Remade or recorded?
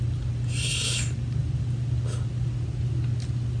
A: recorded